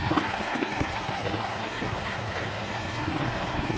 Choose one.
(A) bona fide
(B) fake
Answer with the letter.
B